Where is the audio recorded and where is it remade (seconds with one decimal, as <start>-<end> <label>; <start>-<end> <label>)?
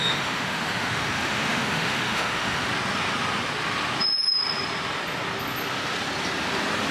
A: 0.0-2.7 remade; 2.7-6.9 recorded